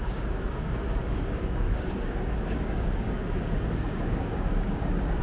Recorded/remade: remade